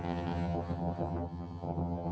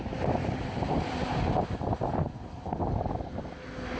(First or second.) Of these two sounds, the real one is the second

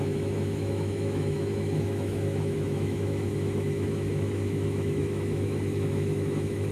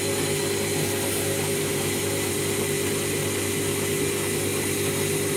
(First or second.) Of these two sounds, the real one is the second